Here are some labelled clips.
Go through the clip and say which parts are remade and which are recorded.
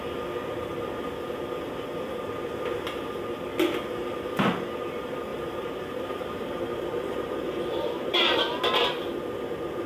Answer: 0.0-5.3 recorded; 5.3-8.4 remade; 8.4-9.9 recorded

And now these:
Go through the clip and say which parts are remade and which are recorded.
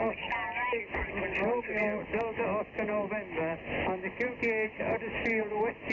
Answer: 0.0-5.9 recorded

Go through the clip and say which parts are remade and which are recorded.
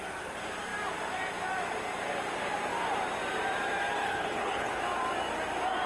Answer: 0.0-4.0 recorded; 4.0-4.8 remade; 4.8-5.9 recorded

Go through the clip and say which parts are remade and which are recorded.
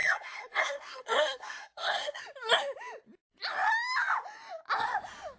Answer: 0.0-2.2 remade; 2.2-5.4 recorded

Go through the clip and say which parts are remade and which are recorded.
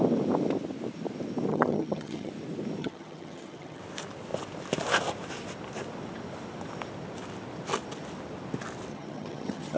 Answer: 0.0-1.5 recorded; 1.5-2.3 remade; 2.3-2.8 recorded; 2.8-3.8 remade; 3.8-8.9 recorded; 8.9-9.8 remade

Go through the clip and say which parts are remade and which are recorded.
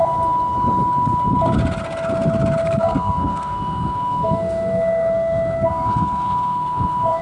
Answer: 0.0-2.6 recorded; 2.6-7.2 remade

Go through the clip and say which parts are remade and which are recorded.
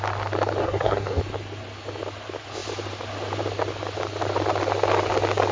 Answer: 0.0-0.6 recorded; 0.6-1.2 remade; 1.2-5.5 recorded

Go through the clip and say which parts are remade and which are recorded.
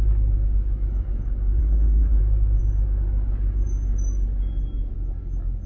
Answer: 0.0-1.6 recorded; 1.6-2.2 remade; 2.2-5.7 recorded